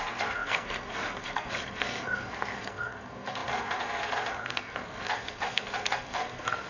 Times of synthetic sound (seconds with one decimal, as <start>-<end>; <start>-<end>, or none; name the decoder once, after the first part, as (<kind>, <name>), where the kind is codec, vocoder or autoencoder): 0.0-6.7 (codec, SNAC)